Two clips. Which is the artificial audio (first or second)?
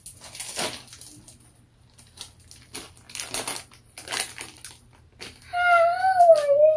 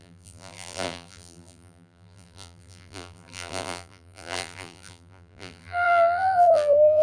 second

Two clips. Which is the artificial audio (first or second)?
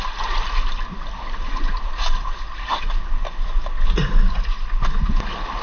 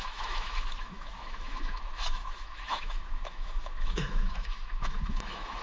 second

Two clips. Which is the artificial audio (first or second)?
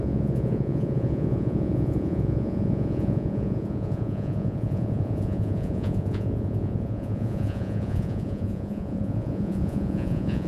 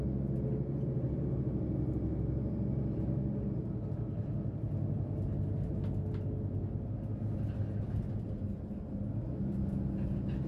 first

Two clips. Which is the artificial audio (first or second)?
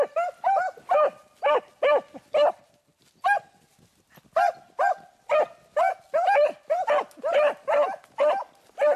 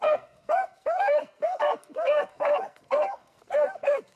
second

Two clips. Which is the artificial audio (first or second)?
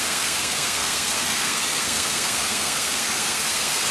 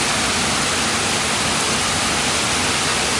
first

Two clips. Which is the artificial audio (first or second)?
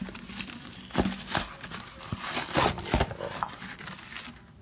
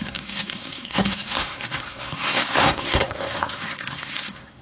second